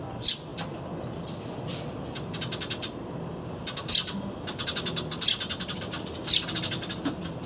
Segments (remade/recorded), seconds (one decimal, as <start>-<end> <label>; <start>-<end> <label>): 0.0-0.5 remade; 0.5-1.2 recorded; 1.2-7.5 remade